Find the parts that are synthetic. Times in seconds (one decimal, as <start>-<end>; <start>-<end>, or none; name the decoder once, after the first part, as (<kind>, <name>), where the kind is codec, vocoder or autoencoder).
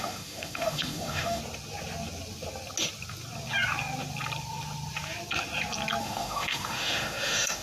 0.0-1.4 (autoencoder, DAC-VAE); 6.0-7.6